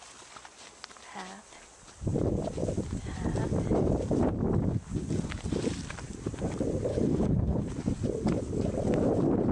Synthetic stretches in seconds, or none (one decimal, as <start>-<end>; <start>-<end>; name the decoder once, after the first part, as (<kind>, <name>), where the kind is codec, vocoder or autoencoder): 6.9-7.7 (codec, HILCodec)